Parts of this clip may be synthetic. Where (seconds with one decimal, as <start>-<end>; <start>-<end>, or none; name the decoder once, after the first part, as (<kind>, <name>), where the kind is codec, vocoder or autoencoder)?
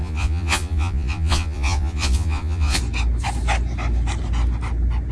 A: 0.0-2.8 (vocoder, Vocos)